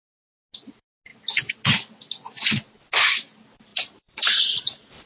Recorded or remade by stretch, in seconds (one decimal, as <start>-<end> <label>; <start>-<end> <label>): 0.0-3.7 recorded; 3.7-5.1 remade